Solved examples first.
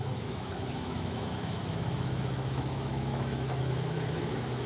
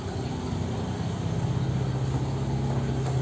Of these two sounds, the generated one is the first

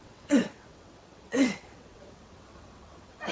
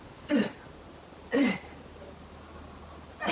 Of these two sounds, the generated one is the first